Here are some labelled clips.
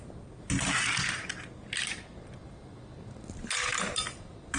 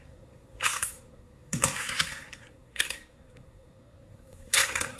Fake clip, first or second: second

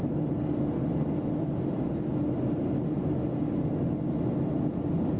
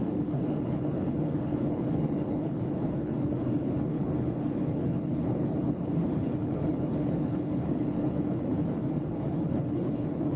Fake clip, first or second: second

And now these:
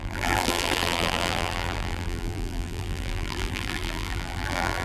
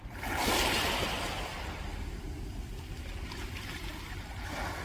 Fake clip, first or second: first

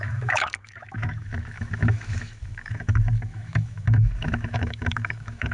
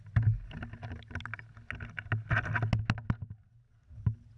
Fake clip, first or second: first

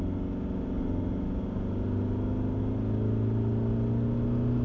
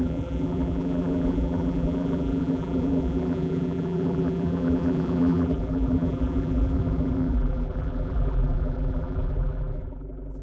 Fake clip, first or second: second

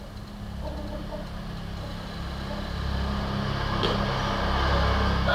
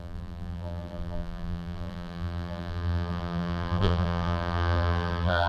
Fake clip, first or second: second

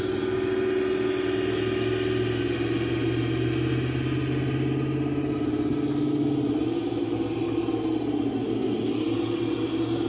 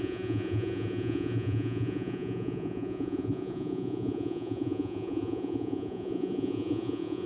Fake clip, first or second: second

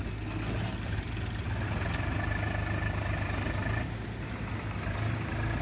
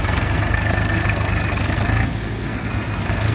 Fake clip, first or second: second